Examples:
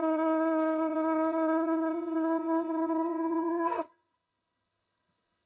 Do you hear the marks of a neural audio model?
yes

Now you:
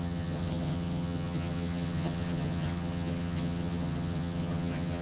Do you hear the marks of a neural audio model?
yes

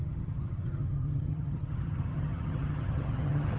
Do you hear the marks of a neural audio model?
yes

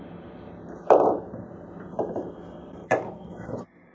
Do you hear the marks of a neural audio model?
no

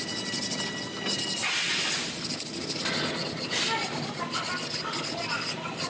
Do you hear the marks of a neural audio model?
no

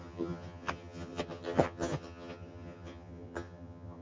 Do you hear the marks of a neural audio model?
yes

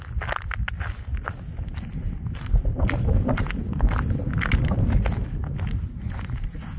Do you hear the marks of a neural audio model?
no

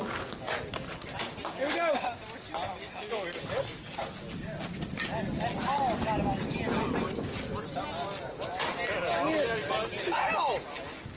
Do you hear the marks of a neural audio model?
no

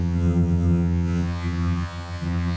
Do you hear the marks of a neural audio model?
yes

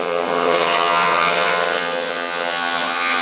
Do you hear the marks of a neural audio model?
yes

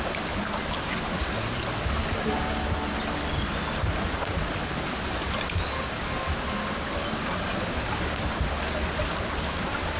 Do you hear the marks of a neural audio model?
no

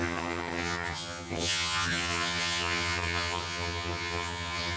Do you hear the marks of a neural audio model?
yes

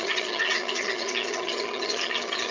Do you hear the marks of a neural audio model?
yes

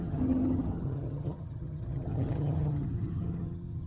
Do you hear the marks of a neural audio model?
yes